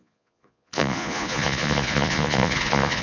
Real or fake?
fake